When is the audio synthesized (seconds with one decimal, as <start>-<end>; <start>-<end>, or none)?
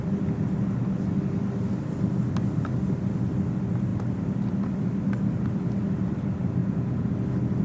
6.6-7.1